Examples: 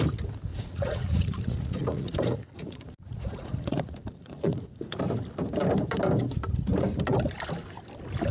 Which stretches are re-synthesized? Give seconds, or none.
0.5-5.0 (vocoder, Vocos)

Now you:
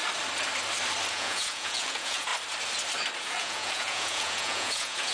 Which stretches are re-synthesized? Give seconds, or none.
1.1-2.3 (vocoder, Vocos); 3.2-5.1

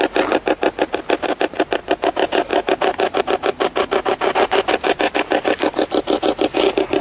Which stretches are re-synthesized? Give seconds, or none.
none

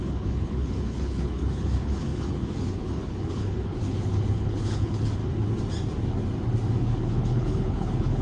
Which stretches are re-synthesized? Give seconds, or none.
0.0-5.2 (codec, HILCodec); 6.8-8.2

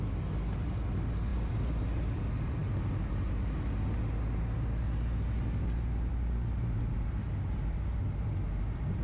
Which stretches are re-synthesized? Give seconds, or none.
none